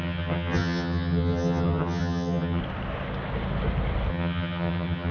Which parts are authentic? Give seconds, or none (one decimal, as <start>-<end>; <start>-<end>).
2.6-4.1